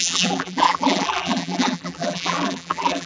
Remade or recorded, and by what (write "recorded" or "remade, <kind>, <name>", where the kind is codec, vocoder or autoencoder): remade, vocoder, BigVGAN v2